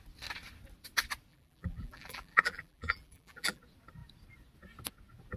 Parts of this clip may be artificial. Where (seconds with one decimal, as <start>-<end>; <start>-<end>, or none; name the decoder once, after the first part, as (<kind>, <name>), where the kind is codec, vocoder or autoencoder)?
1.3-3.6 (vocoder, BigVGAN v2)